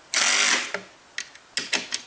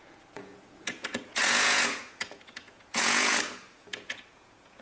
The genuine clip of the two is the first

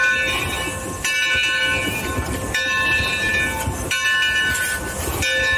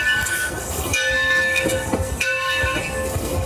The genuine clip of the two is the first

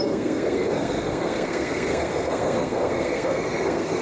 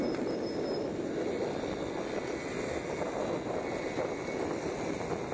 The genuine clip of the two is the second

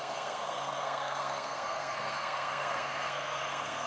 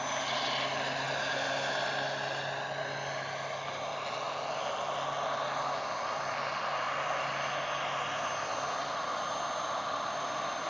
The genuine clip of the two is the second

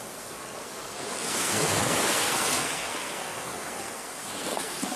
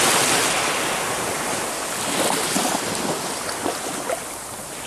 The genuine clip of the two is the second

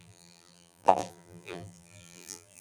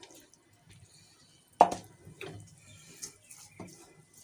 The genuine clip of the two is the second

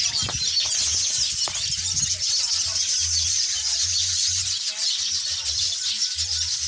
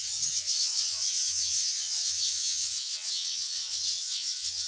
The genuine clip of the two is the first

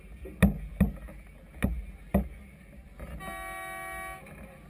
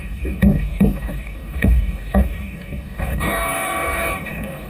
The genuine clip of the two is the first